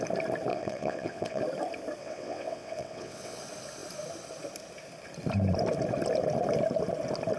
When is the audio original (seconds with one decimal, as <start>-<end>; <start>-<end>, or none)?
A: 0.0-0.5; 1.4-2.0; 3.4-7.4